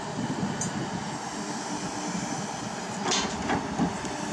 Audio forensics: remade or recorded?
recorded